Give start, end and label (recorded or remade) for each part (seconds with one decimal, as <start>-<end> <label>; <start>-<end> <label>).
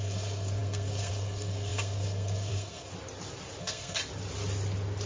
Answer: 0.0-2.9 remade; 2.9-3.6 recorded; 3.6-4.0 remade; 4.0-5.1 recorded